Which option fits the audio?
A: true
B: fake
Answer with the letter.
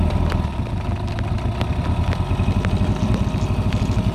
A